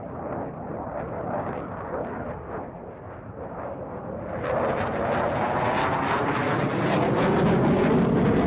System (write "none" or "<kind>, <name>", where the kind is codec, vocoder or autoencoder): none